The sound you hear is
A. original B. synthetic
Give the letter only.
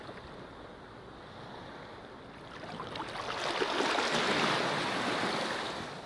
A